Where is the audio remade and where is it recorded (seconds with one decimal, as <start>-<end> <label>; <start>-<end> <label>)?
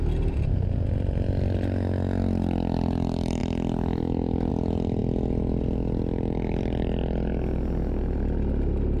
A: 0.0-9.0 recorded